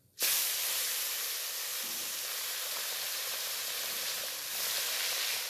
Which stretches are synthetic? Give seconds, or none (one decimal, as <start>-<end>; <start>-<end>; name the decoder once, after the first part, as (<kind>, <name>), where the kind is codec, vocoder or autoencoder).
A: 1.7-5.0 (vocoder, BigVGAN v2)